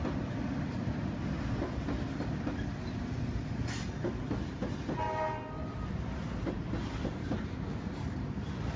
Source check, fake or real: real